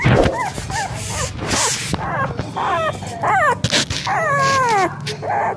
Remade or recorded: recorded